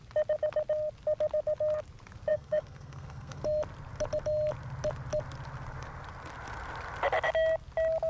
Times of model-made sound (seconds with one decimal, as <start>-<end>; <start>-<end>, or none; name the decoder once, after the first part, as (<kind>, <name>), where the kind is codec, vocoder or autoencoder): 2.3-3.4 (codec, SNAC)